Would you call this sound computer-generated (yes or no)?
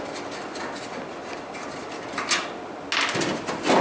no